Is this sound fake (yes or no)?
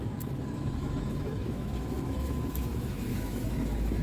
yes